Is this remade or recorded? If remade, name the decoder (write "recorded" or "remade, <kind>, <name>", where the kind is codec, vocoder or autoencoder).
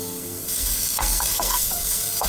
remade, codec, SNAC